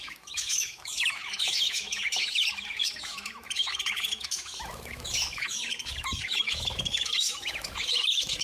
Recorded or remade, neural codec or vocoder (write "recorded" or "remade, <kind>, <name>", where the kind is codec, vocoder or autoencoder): remade, autoencoder, DAC-VAE